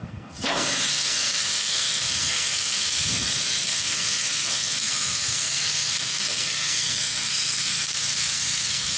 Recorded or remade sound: remade